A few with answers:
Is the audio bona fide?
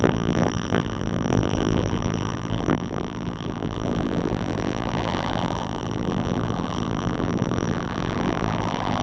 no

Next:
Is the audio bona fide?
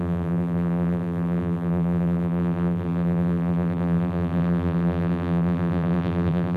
no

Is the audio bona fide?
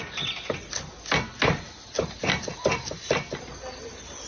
yes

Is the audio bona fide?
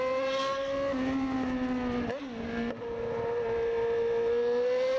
yes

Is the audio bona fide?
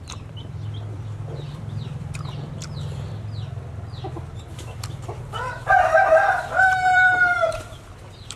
no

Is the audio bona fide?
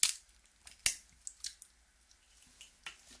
yes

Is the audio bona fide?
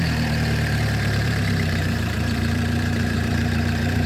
no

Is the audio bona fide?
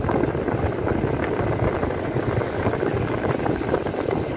yes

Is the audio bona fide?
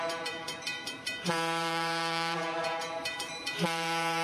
no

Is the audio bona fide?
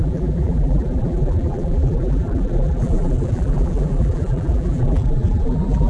no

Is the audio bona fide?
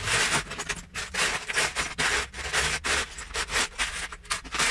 yes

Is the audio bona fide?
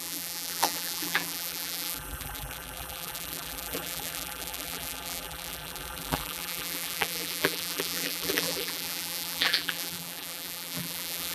no